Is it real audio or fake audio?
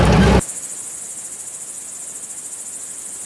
real